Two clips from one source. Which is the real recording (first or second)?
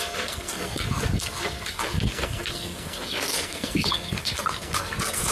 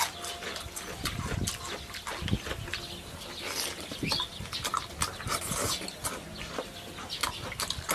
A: second